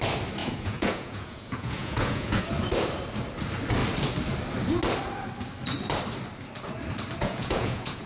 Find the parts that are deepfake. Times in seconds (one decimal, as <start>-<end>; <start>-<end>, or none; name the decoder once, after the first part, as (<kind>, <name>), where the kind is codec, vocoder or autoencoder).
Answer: 0.4-2.4 (vocoder, Vocos); 7.2-8.1